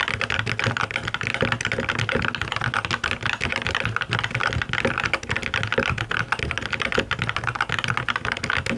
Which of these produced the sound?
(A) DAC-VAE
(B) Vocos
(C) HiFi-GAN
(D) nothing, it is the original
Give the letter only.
D